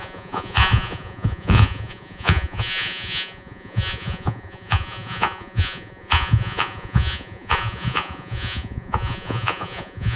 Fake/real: fake